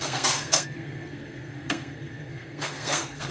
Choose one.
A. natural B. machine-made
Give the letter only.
B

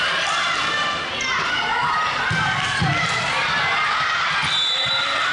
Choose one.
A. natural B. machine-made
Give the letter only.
A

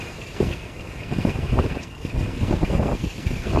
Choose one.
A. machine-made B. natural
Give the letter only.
A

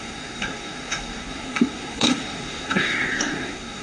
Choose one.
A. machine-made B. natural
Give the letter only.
A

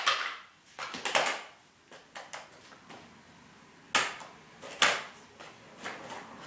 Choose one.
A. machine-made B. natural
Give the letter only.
B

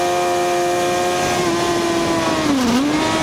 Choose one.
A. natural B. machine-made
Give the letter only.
A